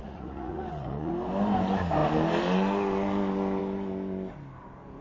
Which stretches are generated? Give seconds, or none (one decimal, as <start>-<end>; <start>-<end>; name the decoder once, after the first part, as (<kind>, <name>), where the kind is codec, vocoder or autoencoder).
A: 0.0-1.1 (vocoder, Vocos)